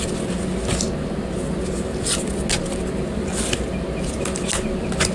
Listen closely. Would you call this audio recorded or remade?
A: recorded